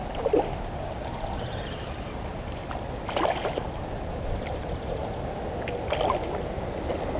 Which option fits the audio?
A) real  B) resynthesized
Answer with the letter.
A